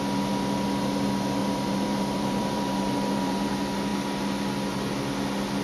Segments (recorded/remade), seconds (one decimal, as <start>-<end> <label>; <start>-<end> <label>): 0.0-1.4 recorded; 1.4-3.5 remade; 3.5-5.6 recorded